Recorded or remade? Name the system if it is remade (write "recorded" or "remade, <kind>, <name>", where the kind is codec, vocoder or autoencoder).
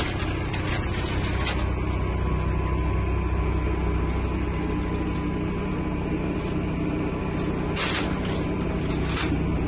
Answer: recorded